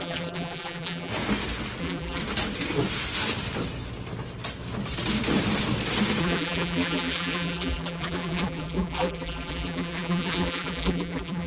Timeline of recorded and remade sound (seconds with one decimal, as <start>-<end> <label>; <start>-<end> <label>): 0.0-1.1 remade; 1.1-1.8 recorded; 1.8-2.2 remade; 2.2-6.2 recorded; 6.2-11.5 remade